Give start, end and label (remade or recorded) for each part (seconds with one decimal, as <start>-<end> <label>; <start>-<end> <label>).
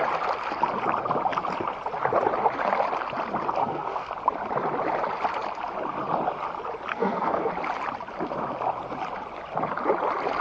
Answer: 0.0-3.6 recorded; 3.6-4.1 remade; 4.1-6.9 recorded; 6.9-7.5 remade; 7.5-10.4 recorded